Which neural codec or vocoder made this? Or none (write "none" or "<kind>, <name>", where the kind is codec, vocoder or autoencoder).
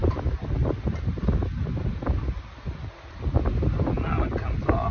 none